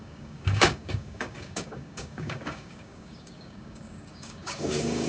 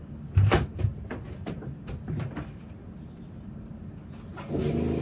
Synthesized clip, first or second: first